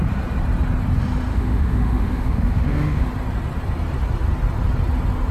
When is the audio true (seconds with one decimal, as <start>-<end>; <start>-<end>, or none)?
0.0-1.3; 3.1-5.3